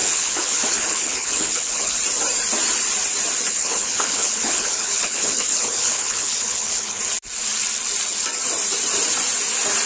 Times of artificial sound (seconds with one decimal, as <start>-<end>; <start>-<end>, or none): 0.0-2.0; 3.5-7.0